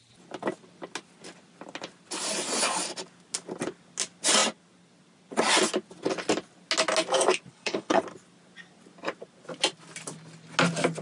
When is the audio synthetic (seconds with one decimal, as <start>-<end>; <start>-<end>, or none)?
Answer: 7.5-8.0